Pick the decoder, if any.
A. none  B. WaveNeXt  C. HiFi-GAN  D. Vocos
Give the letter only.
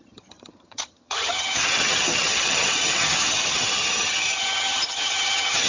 C